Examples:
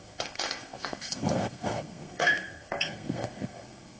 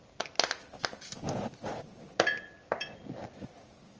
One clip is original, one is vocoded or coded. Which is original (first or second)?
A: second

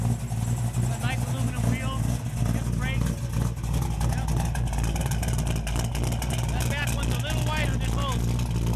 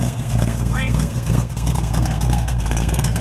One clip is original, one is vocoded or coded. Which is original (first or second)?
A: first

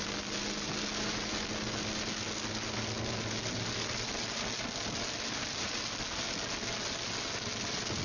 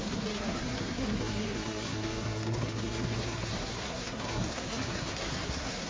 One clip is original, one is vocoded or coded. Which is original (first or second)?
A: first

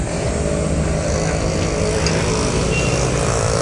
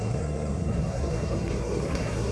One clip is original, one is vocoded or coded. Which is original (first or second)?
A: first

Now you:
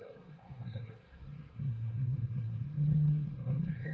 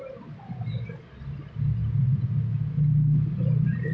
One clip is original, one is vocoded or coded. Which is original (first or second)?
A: second